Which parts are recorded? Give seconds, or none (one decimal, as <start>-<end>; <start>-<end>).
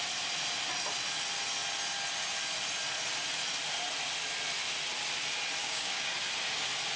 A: 0.0-5.6; 6.1-7.0